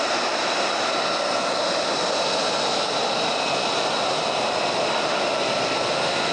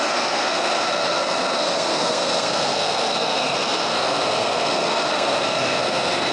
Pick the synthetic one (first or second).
second